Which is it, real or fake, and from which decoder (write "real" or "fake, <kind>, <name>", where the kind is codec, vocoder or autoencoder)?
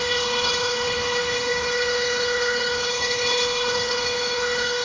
fake, codec, HILCodec